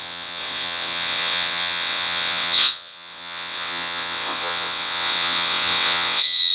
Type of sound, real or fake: fake